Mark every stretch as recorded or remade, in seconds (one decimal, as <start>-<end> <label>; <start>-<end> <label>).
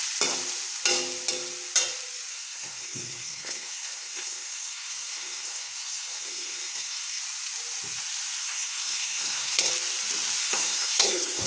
0.0-2.3 recorded; 2.3-7.2 remade; 7.2-8.4 recorded; 8.4-9.7 remade; 9.7-10.4 recorded; 10.4-11.5 remade